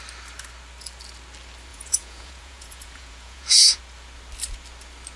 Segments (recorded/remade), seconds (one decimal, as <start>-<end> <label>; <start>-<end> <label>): 0.0-1.7 recorded; 1.7-3.8 remade; 3.8-5.2 recorded